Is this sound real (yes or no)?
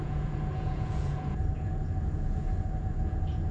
no